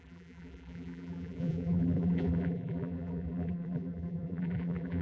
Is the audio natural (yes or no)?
no